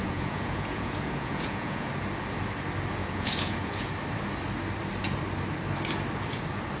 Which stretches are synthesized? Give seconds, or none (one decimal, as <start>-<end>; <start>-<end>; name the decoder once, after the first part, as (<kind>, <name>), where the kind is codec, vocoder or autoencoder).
0.0-1.9 (vocoder, Vocos); 3.0-3.9